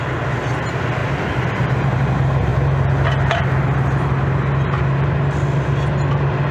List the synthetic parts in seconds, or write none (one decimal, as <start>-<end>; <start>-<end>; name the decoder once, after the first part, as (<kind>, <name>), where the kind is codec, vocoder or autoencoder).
1.0-1.7 (vocoder, BigVGAN v2)